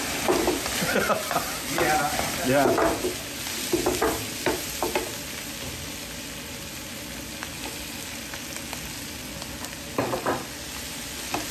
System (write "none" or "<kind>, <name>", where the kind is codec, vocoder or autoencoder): none